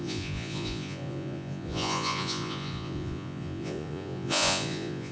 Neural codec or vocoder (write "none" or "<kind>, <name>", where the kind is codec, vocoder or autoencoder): vocoder, Vocos